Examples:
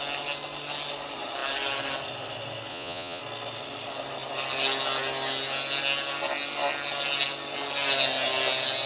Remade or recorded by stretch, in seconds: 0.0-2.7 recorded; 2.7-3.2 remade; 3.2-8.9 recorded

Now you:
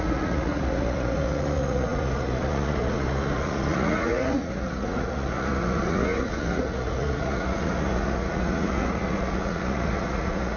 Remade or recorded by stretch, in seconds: 0.0-10.6 remade

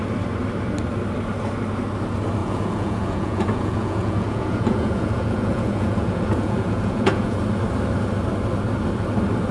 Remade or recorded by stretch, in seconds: 0.0-2.4 recorded; 2.4-7.4 remade; 7.4-9.5 recorded

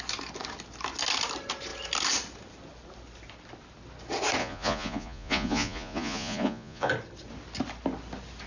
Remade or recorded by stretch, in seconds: 0.0-4.4 recorded; 4.4-6.9 remade; 6.9-8.5 recorded

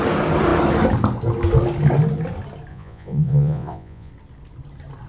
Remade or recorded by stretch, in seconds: 0.0-2.7 recorded; 2.7-4.1 remade; 4.1-5.1 recorded